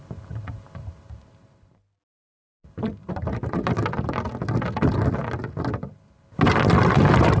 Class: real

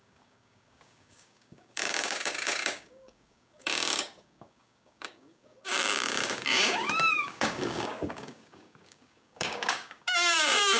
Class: fake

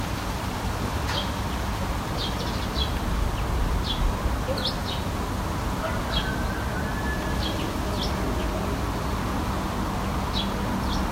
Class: real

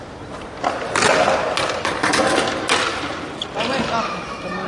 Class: real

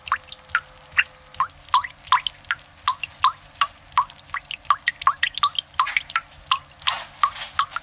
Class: real